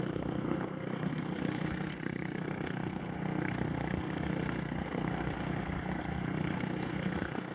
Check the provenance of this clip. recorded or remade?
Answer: remade